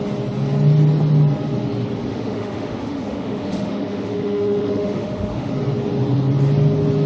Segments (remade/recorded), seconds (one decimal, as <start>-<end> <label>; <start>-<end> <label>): 0.0-2.1 recorded; 2.1-5.5 remade; 5.5-7.1 recorded